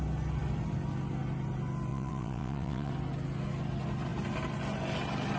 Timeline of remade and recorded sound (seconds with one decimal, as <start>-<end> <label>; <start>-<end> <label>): 0.0-1.9 recorded; 1.9-2.9 remade; 2.9-5.4 recorded